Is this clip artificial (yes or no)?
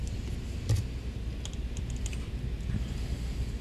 no